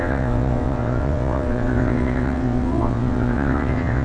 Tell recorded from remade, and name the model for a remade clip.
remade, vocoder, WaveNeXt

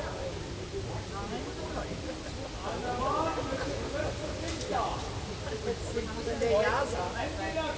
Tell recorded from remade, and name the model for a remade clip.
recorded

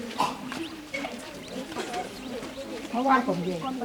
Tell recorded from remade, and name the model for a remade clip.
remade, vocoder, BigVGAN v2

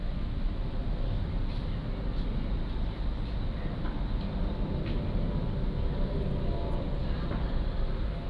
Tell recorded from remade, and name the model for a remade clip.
recorded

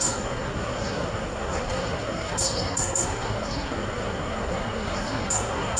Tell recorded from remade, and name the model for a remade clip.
remade, codec, SNAC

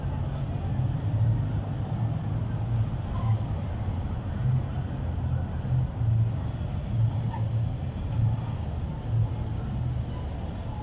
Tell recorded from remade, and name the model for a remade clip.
recorded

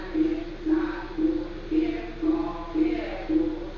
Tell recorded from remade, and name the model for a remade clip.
recorded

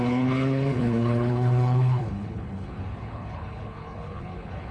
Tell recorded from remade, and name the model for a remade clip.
remade, codec, HILCodec